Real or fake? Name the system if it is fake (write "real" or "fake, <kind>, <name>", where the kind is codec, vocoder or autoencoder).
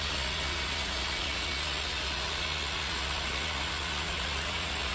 fake, vocoder, Vocos